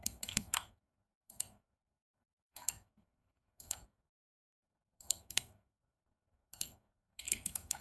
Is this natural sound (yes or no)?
no